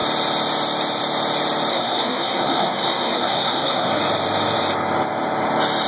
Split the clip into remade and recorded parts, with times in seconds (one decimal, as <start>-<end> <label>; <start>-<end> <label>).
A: 0.0-1.7 recorded; 1.7-4.0 remade; 4.0-5.9 recorded